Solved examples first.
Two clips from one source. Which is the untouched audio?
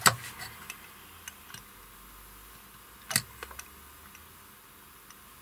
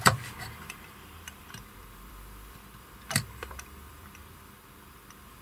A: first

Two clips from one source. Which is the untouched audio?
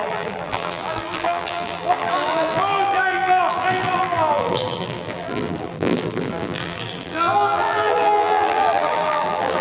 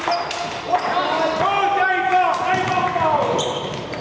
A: second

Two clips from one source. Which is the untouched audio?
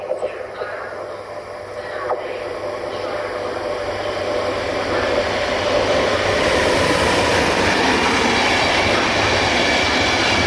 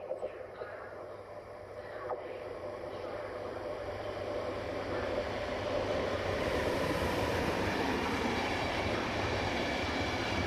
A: first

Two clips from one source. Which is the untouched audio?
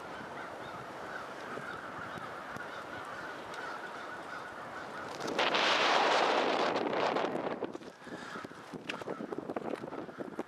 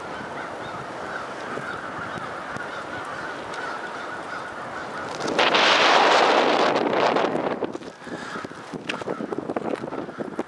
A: second